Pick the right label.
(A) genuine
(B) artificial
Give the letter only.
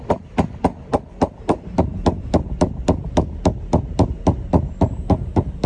B